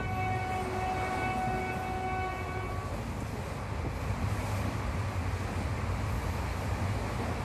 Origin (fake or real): real